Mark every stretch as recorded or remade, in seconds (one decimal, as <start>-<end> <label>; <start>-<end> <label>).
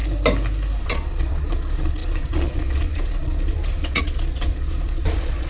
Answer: 0.0-0.8 recorded; 0.8-5.5 remade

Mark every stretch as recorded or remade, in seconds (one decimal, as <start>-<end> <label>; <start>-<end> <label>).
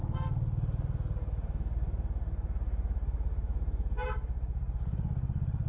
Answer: 0.0-1.2 recorded; 1.2-4.6 remade; 4.6-5.7 recorded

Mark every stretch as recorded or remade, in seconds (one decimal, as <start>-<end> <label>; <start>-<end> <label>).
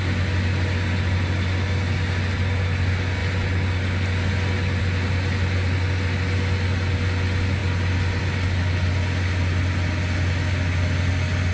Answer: 0.0-11.5 recorded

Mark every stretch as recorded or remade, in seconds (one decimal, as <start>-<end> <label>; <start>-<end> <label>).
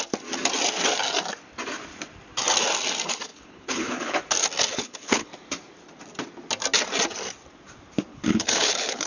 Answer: 0.0-3.3 recorded; 3.3-4.2 remade; 4.2-4.7 recorded; 4.7-5.3 remade; 5.3-8.1 recorded; 8.1-9.1 remade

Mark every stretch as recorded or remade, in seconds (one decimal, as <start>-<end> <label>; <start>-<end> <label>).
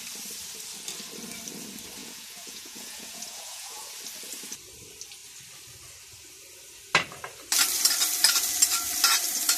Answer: 0.0-2.0 recorded; 2.0-3.9 remade; 3.9-9.6 recorded